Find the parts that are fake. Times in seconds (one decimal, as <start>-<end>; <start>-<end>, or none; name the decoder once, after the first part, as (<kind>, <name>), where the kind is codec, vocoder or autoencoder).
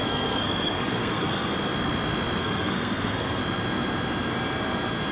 0.0-1.5 (codec, SNAC); 2.4-3.4